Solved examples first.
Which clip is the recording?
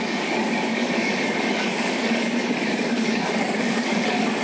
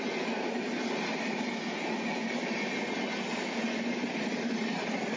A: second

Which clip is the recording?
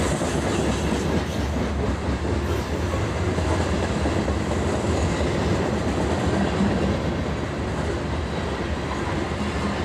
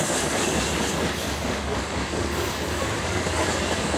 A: first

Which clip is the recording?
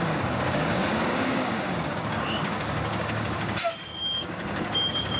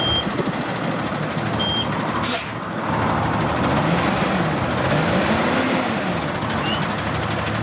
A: second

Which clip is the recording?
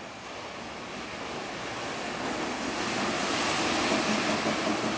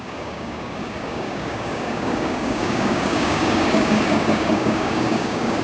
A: first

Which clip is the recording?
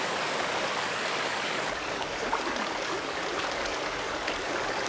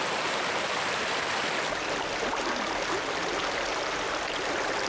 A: second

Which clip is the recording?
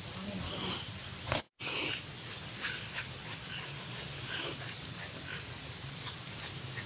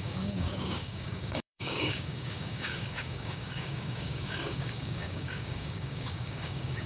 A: first